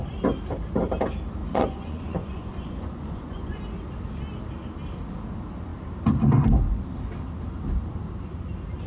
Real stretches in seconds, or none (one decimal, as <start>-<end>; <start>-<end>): 0.0-1.4; 3.6-8.9